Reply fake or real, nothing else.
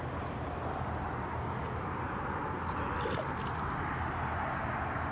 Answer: real